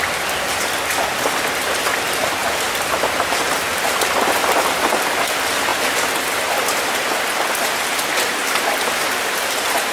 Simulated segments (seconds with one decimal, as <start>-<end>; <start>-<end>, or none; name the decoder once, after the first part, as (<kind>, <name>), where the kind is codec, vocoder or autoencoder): 2.4-4.1 (vocoder, BigVGAN v2); 5.7-6.3

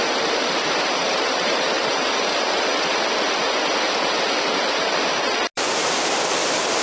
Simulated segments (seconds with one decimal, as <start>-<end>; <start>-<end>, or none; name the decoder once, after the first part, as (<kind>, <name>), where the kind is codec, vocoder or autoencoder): 0.0-2.9 (vocoder, BigVGAN v2)

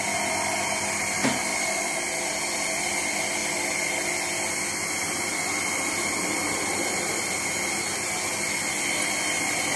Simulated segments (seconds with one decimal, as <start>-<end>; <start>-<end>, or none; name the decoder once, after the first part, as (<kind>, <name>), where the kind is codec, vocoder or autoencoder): none

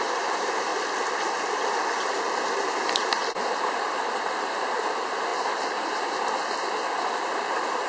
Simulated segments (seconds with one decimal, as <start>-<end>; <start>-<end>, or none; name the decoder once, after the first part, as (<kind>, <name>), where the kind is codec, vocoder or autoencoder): 0.0-0.7 (vocoder, BigVGAN v2); 2.2-5.3; 7.0-7.9